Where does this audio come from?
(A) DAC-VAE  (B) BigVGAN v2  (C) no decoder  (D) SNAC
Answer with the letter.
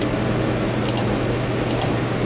C